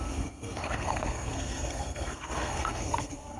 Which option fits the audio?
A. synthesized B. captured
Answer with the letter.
A